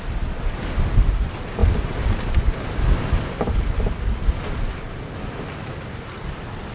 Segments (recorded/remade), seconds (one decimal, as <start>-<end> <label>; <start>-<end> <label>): 0.0-6.7 recorded